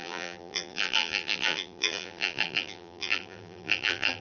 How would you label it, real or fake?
fake